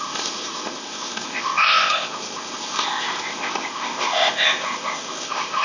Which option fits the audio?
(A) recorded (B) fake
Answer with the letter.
B